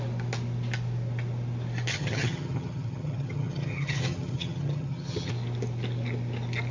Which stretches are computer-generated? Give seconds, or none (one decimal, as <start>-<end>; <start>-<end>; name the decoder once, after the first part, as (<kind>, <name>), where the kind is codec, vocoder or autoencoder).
1.9-5.3 (vocoder, HiFi-GAN)